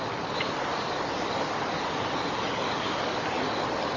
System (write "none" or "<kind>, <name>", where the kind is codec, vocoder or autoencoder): none